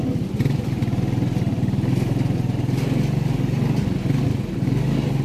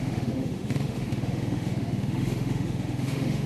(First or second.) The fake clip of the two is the second